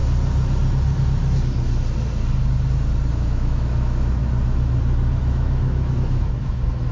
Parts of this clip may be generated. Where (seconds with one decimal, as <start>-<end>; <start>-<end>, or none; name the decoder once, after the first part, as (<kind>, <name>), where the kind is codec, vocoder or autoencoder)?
3.1-4.2 (autoencoder, DAC-VAE); 5.2-6.9